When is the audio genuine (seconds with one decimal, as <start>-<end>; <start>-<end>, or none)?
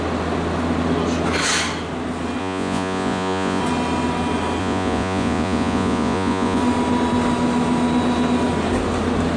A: 0.0-2.4; 3.6-4.6; 6.6-9.4